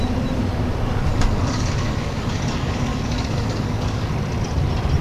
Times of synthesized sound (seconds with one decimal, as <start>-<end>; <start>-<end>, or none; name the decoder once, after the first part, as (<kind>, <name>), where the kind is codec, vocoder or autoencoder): 1.1-4.1 (codec, DAC)